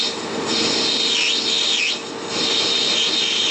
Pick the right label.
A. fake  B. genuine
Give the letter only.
B